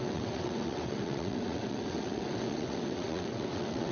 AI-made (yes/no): yes